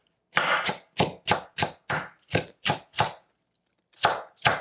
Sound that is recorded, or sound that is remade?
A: recorded